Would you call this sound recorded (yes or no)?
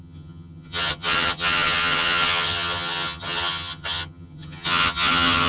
no